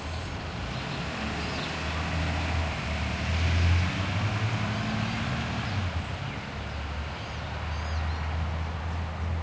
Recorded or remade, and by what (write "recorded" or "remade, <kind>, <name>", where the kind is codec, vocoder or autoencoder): recorded